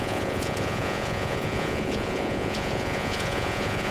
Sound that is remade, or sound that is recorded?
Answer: remade